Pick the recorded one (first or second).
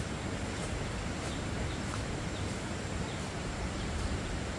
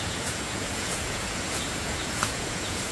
first